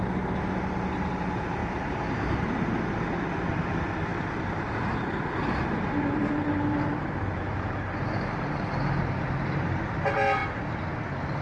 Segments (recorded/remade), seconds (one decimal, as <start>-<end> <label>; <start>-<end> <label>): 0.0-1.6 recorded; 1.6-2.5 remade; 2.5-4.1 recorded; 4.1-9.0 remade; 9.0-11.4 recorded